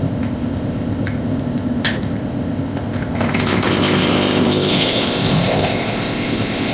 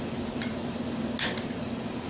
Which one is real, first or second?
second